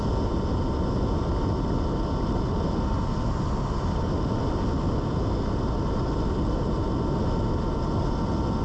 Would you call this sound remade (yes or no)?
no